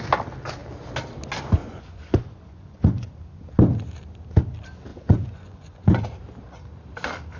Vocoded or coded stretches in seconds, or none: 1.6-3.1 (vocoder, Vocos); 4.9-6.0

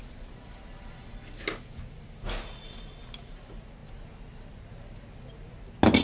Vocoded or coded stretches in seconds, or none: none

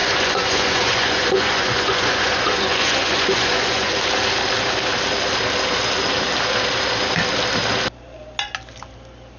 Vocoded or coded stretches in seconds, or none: 0.0-3.9 (vocoder, Vocos)